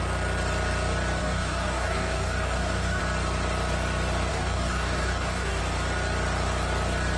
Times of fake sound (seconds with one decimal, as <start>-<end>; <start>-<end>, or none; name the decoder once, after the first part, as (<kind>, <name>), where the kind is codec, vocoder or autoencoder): 1.2-3.0 (codec, DAC); 4.3-5.6